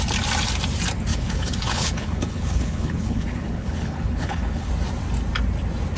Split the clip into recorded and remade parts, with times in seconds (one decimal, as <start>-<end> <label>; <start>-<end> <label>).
0.0-1.1 recorded; 1.1-4.7 remade; 4.7-6.0 recorded